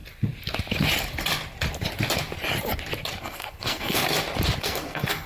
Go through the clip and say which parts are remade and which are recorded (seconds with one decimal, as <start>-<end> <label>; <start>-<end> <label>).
0.0-3.2 recorded; 3.2-4.0 remade; 4.0-4.6 recorded; 4.6-5.3 remade